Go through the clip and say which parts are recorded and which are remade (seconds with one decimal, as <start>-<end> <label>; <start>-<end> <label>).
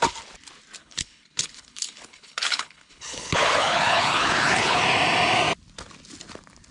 0.0-0.8 recorded; 0.8-4.8 remade; 4.8-6.7 recorded